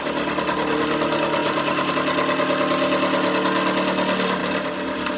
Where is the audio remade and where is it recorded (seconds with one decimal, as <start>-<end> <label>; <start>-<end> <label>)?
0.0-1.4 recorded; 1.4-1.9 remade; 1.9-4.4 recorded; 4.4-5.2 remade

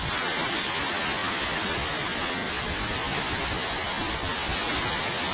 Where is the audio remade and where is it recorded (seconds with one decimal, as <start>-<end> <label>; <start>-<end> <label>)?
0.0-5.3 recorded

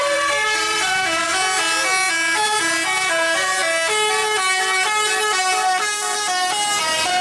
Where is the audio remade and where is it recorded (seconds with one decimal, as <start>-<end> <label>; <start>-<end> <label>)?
0.0-1.3 remade; 1.3-2.6 recorded; 2.6-3.5 remade; 3.5-5.4 recorded; 5.4-7.2 remade